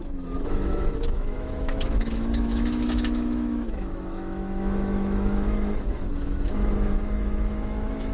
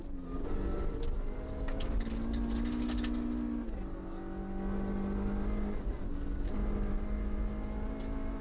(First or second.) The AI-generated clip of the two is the first